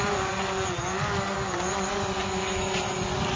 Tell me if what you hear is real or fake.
real